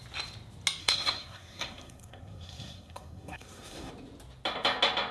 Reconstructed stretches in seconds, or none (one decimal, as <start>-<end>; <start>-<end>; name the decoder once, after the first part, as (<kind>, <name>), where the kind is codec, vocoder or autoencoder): 0.8-3.9 (codec, SNAC)

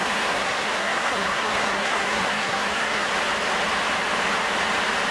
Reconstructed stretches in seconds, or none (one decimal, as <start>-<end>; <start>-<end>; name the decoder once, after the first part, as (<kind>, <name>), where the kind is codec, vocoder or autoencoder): 0.0-3.1 (codec, SNAC)

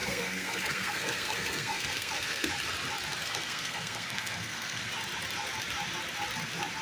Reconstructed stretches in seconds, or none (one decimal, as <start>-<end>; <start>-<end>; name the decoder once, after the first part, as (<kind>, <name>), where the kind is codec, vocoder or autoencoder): 0.0-2.5 (codec, SNAC); 3.2-4.8

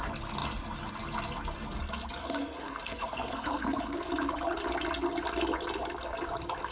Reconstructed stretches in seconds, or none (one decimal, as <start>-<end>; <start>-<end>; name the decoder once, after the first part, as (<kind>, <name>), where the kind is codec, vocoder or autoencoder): 2.2-3.8 (codec, SNAC)

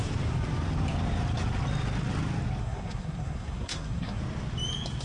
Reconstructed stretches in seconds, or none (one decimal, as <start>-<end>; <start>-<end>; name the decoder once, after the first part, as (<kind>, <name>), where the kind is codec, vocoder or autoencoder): 2.6-4.2 (codec, SNAC)

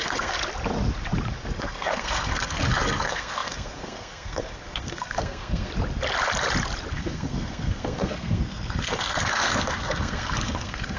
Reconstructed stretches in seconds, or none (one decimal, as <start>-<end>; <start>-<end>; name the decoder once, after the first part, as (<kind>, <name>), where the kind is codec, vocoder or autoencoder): 0.0-0.4 (codec, SNAC); 1.6-5.7; 6.9-11.0

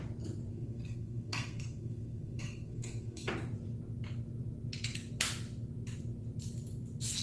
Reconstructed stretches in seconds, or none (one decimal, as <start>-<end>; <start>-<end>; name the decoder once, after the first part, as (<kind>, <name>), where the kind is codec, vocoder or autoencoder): 0.5-3.3 (codec, SNAC)